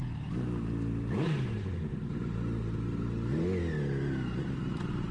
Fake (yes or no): no